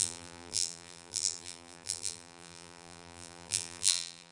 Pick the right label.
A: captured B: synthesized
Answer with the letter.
B